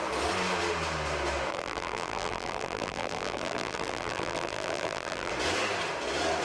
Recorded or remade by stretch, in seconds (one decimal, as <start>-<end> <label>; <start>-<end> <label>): 0.0-1.5 recorded; 1.5-5.3 remade; 5.3-6.4 recorded